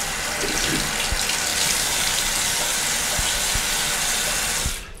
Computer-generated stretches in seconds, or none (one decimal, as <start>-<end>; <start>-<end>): none